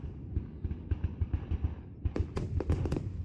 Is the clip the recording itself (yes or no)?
yes